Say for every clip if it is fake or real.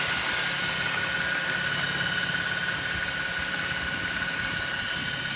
real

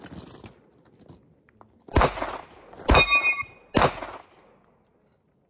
real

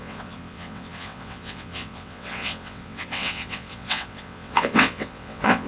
fake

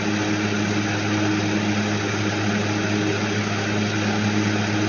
real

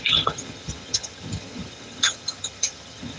fake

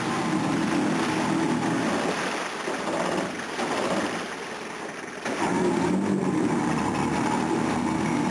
real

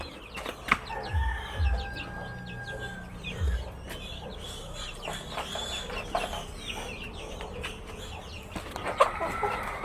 real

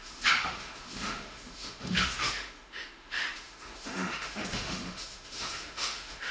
fake